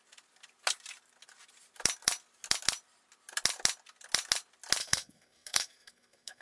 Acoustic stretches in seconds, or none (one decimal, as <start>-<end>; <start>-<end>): 0.0-4.8